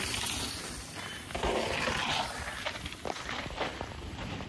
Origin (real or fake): real